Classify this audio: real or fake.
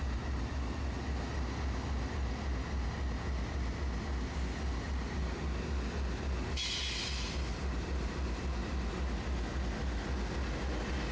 real